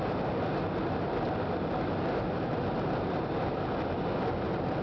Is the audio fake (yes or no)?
no